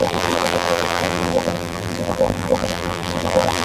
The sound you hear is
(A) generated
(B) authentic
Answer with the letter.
A